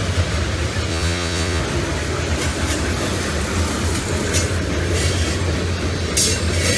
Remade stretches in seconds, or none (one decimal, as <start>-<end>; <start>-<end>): 0.9-1.6